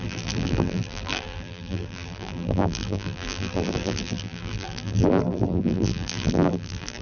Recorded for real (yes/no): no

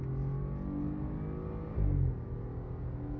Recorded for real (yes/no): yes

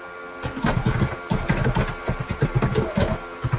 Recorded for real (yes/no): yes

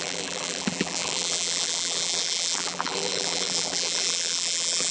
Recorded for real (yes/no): no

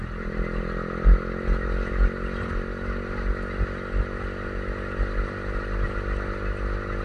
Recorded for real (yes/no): yes